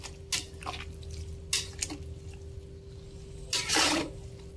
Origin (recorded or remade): recorded